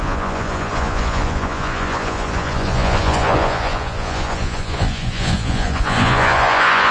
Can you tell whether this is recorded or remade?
remade